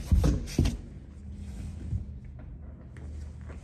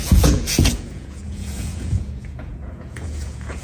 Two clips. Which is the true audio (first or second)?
first